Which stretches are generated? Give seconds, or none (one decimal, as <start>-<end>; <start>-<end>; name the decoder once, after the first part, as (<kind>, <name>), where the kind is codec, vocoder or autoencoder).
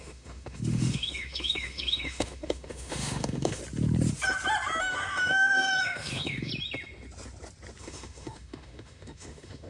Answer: 0.0-3.6 (autoencoder, DAC-VAE); 4.8-6.5; 7.8-9.7